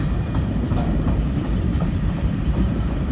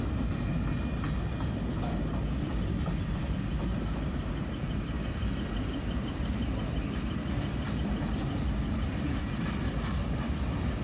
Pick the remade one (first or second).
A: first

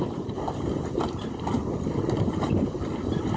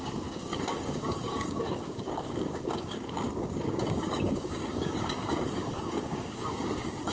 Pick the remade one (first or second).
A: second